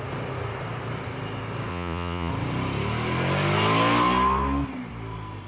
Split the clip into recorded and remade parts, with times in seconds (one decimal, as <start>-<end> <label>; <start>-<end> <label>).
0.0-1.7 recorded; 1.7-2.3 remade; 2.3-5.5 recorded